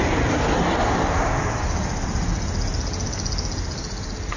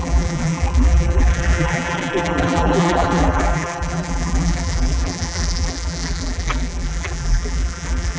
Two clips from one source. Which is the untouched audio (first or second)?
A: first